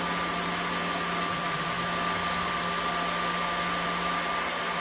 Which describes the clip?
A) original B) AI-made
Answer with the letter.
A